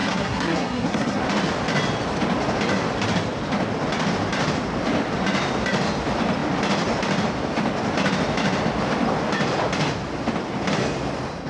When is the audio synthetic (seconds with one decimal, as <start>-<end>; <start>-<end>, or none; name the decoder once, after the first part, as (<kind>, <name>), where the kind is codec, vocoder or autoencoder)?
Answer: 0.0-1.2 (codec, SNAC)